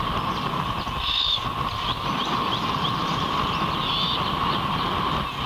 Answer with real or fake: real